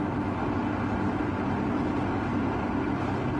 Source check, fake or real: real